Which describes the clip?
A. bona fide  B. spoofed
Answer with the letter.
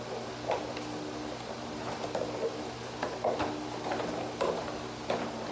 A